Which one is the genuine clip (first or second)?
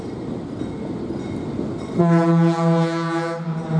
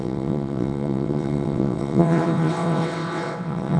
first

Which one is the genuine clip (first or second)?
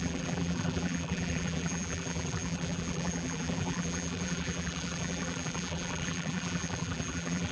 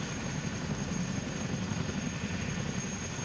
second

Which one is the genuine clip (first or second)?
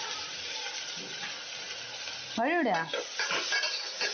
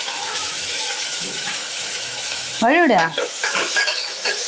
first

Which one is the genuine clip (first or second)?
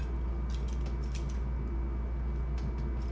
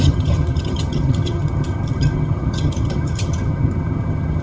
first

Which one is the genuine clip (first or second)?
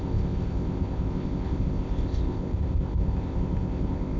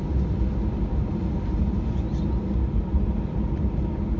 second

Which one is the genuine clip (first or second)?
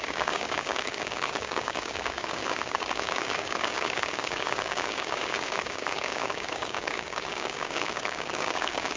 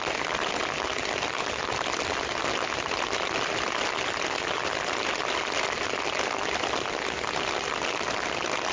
second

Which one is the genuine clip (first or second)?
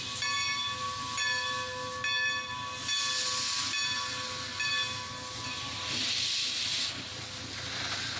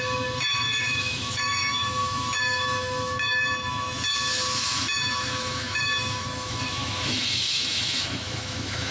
first